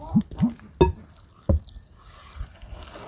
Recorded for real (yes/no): yes